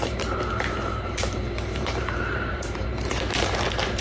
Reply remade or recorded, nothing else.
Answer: remade